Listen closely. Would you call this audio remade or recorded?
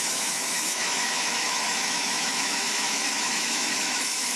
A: remade